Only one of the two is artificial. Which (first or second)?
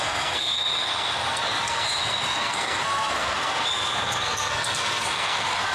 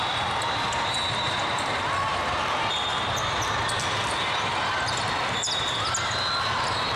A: first